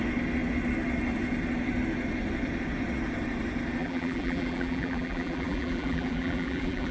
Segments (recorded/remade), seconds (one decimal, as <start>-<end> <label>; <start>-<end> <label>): 0.0-3.8 recorded; 3.8-6.9 remade